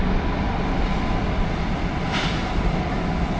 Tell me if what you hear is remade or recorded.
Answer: recorded